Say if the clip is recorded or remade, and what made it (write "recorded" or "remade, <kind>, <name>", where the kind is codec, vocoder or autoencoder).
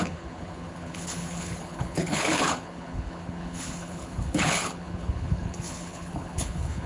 remade, codec, HILCodec